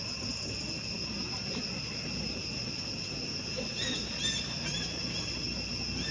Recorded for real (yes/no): yes